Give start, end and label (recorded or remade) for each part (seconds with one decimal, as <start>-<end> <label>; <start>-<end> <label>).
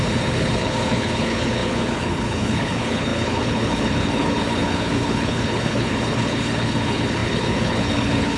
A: 0.0-8.4 remade